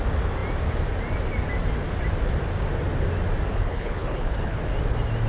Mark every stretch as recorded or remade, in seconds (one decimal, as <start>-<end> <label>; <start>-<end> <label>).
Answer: 0.0-3.5 recorded; 3.5-4.6 remade; 4.6-5.3 recorded